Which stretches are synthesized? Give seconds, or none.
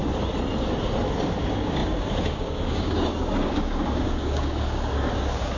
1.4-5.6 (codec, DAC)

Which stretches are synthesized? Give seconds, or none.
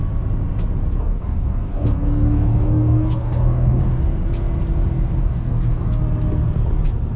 1.0-3.8 (codec, DAC); 5.2-6.0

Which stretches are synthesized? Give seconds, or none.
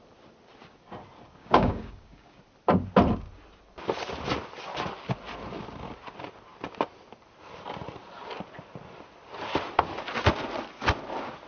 1.4-2.4 (codec, DAC)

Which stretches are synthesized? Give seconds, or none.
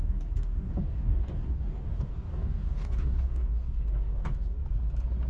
0.0-4.6 (codec, DAC)